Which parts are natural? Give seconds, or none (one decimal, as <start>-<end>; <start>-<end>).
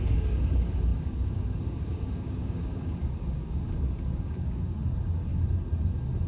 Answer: 5.3-6.3